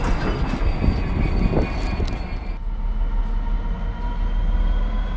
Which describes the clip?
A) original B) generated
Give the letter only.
A